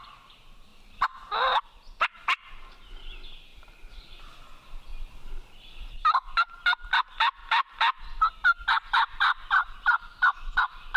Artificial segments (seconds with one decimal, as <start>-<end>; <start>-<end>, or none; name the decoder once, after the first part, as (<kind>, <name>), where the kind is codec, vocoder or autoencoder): 0.7-2.5 (vocoder, BigVGAN v2); 3.5-4.2; 7.4-8.2